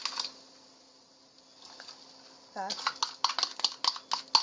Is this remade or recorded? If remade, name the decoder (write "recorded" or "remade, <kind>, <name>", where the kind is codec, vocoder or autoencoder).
recorded